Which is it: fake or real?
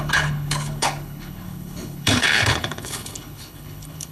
fake